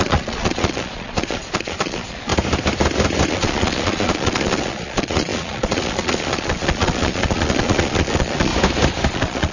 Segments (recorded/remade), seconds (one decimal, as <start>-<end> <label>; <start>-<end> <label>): 0.0-2.3 remade; 2.3-3.3 recorded; 3.3-8.5 remade; 8.5-9.1 recorded; 9.1-9.5 remade